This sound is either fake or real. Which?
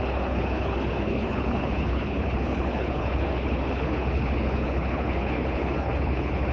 fake